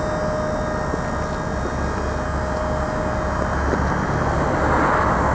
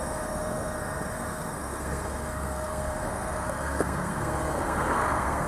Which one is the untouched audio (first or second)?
first